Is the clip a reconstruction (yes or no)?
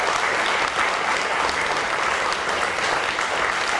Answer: no